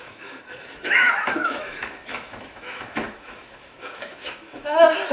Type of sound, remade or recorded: remade